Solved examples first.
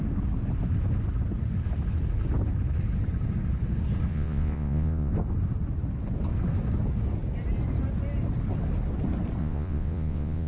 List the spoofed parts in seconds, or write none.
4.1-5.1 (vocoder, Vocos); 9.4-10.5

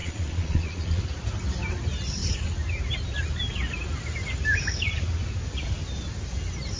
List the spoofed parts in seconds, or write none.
0.0-1.0 (vocoder, Vocos)

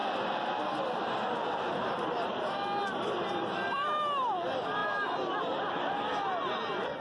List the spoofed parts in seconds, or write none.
none